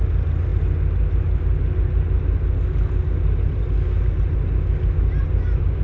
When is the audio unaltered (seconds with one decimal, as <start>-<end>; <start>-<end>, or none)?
0.0-5.8